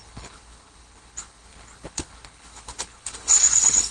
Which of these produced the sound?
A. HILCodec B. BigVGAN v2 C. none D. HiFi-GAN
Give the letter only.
A